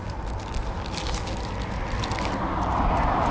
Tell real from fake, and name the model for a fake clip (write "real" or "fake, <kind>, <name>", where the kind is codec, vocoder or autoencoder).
real